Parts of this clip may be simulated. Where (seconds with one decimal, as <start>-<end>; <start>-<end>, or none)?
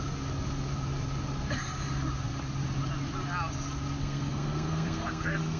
4.0-5.6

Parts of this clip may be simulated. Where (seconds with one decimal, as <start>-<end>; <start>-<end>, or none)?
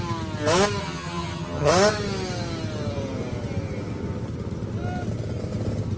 0.8-1.7